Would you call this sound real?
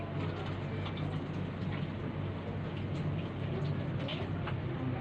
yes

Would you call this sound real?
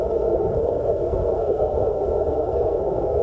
no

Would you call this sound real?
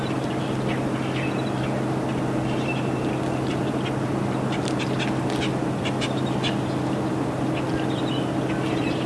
yes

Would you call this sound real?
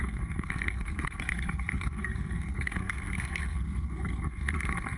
no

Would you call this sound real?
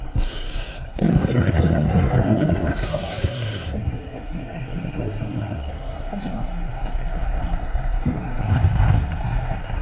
no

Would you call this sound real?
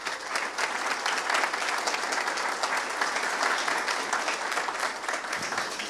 yes